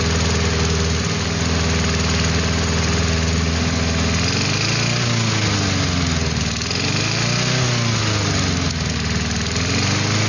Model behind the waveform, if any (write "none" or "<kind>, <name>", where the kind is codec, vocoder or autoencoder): none